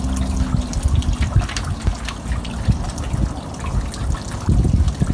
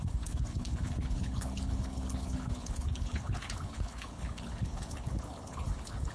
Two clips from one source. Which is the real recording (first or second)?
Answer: first